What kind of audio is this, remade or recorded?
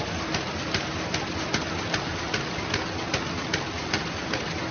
recorded